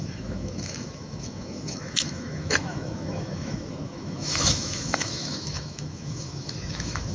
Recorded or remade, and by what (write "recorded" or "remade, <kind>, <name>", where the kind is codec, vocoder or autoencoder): remade, autoencoder, DAC-VAE